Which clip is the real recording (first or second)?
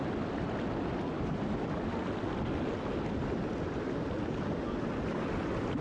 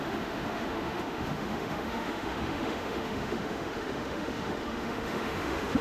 first